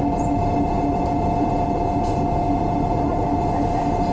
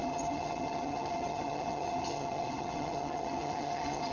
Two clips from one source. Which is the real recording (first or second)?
first